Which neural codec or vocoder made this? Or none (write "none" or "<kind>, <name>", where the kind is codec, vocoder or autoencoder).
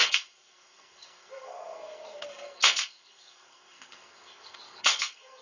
codec, SNAC